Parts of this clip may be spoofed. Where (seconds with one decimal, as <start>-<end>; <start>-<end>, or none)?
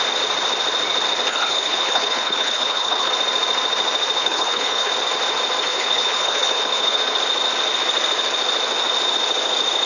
1.3-3.1; 4.2-4.9; 5.7-7.0